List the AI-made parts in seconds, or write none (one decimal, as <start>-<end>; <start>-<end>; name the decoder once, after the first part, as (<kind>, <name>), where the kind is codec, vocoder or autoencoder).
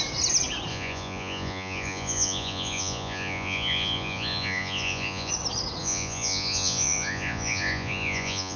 0.7-5.3 (vocoder, Vocos); 5.8-8.6